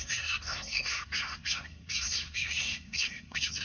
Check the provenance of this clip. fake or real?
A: fake